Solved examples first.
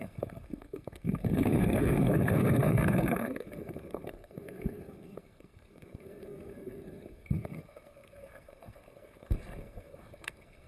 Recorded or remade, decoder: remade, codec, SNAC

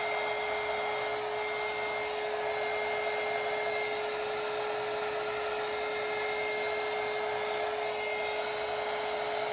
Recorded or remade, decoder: recorded